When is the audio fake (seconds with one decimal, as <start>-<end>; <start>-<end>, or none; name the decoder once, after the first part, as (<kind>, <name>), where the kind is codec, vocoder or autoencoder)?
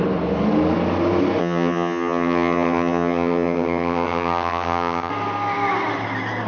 1.4-5.1 (vocoder, HiFi-GAN)